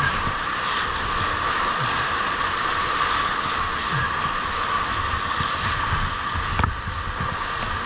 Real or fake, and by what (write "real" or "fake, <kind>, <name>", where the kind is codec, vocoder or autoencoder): real